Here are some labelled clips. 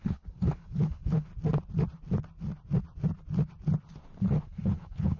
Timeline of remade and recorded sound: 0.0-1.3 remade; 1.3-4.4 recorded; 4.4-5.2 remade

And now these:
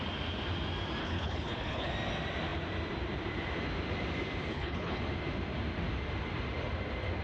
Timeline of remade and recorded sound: 0.0-1.0 recorded; 1.0-1.9 remade; 1.9-4.5 recorded; 4.5-5.0 remade; 5.0-7.2 recorded

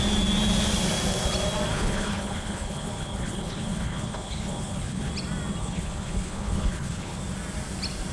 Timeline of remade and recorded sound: 0.0-1.7 recorded; 1.7-5.1 remade; 5.1-5.6 recorded; 5.6-7.2 remade; 7.2-8.1 recorded

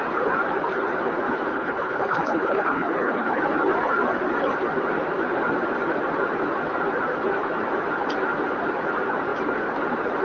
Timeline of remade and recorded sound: 0.0-1.5 recorded; 1.5-3.4 remade; 3.4-10.2 recorded

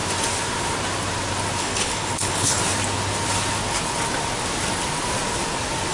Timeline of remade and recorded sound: 0.0-1.6 recorded; 1.6-2.6 remade; 2.6-5.9 recorded